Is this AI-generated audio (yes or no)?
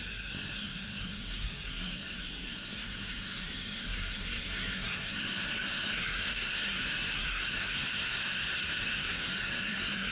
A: yes